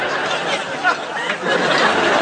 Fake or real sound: real